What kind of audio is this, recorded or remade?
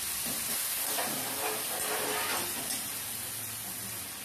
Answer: recorded